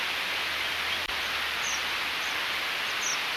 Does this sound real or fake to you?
real